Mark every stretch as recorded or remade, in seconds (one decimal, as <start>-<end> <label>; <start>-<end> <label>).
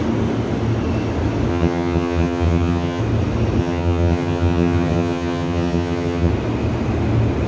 0.0-1.5 recorded; 1.5-3.0 remade; 3.0-3.6 recorded; 3.6-6.3 remade; 6.3-7.5 recorded